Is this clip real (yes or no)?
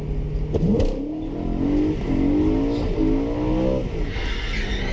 yes